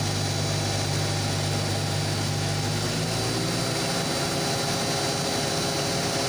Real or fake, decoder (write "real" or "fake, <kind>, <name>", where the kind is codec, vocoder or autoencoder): real